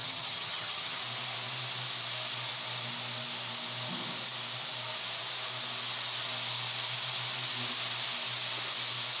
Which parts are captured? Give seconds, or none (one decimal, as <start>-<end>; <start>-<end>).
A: 1.0-9.2

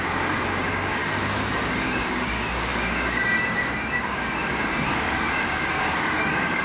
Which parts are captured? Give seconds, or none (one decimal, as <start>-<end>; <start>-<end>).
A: 1.0-1.7

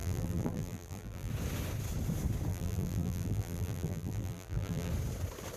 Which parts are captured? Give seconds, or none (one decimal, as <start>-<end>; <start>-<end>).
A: 1.3-2.5; 4.9-5.6

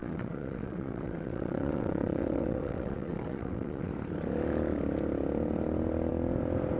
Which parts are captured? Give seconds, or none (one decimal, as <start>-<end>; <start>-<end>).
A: 3.9-6.8

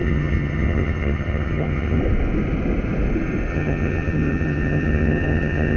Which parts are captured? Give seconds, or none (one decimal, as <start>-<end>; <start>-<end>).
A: 2.0-3.5

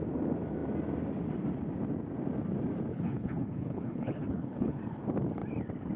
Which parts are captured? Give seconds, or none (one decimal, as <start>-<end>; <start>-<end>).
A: 0.0-2.9; 4.8-6.0